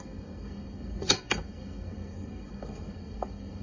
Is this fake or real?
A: fake